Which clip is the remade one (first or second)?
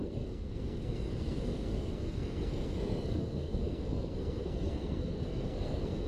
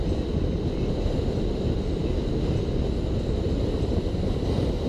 first